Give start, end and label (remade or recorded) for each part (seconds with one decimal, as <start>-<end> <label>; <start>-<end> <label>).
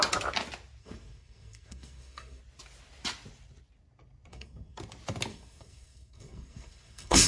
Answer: 0.0-0.8 recorded; 0.8-2.4 remade; 2.4-4.3 recorded; 4.3-4.8 remade; 4.8-5.3 recorded; 5.3-7.3 remade